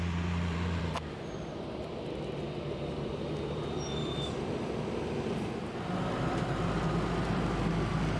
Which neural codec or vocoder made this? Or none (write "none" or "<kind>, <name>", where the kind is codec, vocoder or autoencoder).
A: vocoder, BigVGAN v2